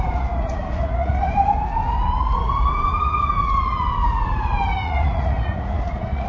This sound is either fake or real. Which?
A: fake